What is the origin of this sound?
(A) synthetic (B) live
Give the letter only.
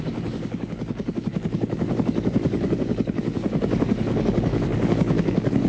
A